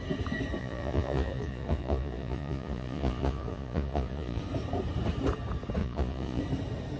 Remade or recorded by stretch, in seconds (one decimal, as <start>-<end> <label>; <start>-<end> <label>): 0.0-0.6 recorded; 0.6-4.4 remade; 4.4-5.8 recorded; 5.8-6.4 remade; 6.4-7.0 recorded

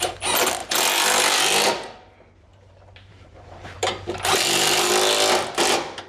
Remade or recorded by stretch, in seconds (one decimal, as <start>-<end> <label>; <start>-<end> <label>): 0.0-2.5 recorded; 2.5-4.9 remade; 4.9-6.1 recorded

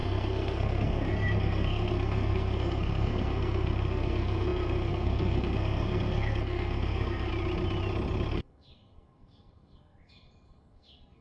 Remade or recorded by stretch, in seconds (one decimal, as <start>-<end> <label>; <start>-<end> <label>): 0.0-7.3 remade; 7.3-8.3 recorded; 8.3-11.2 remade

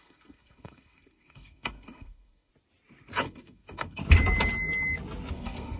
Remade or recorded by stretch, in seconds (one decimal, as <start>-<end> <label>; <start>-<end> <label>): 0.0-2.5 remade; 2.5-3.2 recorded; 3.2-4.0 remade; 4.0-5.3 recorded; 5.3-5.8 remade

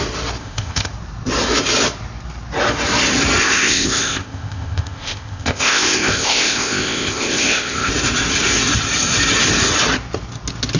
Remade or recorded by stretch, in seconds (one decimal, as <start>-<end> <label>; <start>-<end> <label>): 0.0-0.4 recorded; 0.4-0.9 remade; 0.9-3.4 recorded; 3.4-7.9 remade; 7.9-10.8 recorded

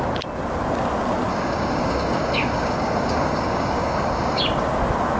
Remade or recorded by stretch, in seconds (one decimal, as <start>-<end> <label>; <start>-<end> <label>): 0.0-1.3 recorded; 1.3-4.4 remade; 4.4-5.2 recorded